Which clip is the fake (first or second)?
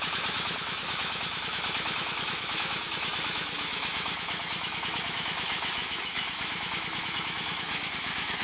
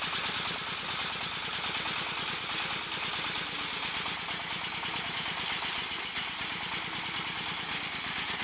first